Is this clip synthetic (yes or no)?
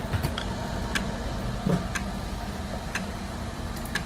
no